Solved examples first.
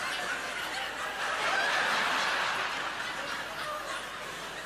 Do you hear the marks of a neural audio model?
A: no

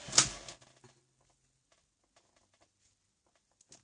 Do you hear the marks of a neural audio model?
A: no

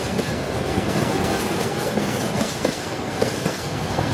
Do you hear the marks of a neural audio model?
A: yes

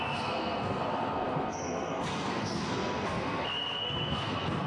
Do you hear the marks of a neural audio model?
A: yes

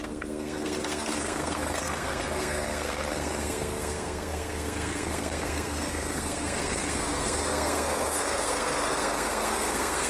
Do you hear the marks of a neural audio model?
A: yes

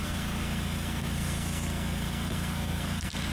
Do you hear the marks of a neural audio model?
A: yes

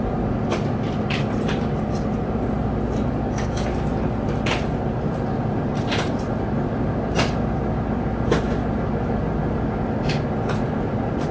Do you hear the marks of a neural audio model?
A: no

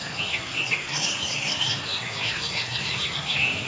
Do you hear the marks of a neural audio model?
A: yes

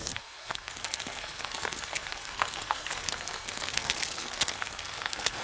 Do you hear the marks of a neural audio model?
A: yes